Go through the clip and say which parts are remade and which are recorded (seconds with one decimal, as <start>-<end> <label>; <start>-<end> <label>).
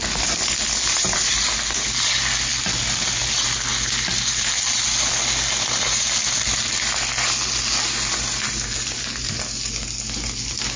0.0-10.8 recorded